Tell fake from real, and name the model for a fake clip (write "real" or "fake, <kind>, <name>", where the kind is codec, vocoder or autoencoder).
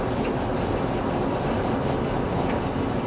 real